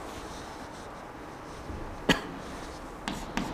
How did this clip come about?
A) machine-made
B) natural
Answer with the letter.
B